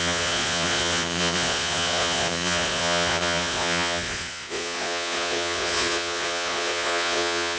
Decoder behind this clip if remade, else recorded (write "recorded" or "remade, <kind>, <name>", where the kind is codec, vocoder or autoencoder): remade, vocoder, Vocos